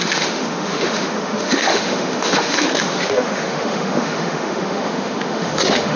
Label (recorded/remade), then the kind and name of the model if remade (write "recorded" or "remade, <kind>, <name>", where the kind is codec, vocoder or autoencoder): remade, autoencoder, DAC-VAE